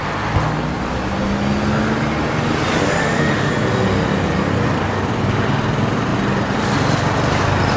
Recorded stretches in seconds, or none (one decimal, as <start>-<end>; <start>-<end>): 0.0-3.0; 3.5-7.8